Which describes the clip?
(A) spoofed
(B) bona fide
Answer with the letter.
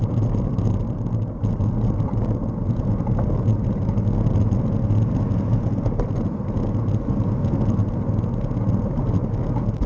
B